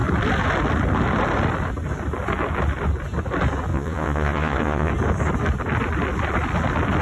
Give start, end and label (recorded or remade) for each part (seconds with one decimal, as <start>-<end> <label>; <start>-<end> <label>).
0.0-3.7 recorded; 3.7-4.9 remade; 4.9-7.0 recorded